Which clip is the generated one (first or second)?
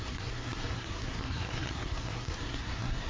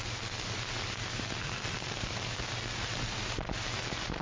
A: first